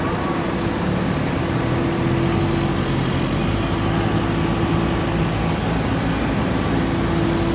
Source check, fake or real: real